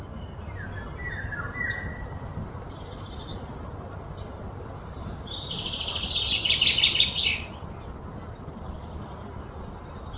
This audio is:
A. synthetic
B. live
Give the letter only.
B